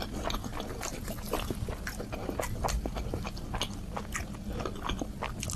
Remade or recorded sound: recorded